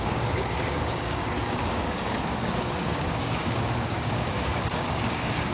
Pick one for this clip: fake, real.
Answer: fake